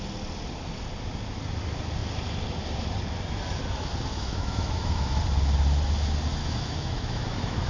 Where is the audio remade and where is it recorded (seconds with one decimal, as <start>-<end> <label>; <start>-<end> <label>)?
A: 0.0-4.1 recorded; 4.1-5.2 remade; 5.2-6.4 recorded; 6.4-7.7 remade